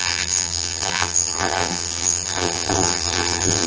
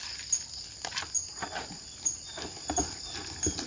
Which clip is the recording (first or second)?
second